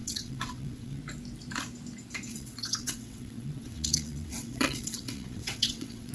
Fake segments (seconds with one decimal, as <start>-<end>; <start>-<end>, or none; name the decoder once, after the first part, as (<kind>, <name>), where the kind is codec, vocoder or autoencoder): 0.0-1.0 (vocoder, WaveNeXt); 2.3-6.1